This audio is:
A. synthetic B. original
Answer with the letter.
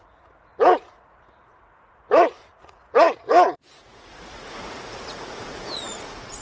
A